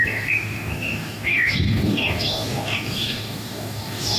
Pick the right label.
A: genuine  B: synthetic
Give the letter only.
B